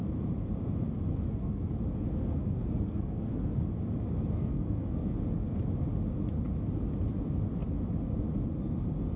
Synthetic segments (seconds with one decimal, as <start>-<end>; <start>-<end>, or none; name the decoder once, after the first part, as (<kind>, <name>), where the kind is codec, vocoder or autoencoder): 1.1-1.7 (codec, SNAC); 2.3-3.6; 4.4-5.1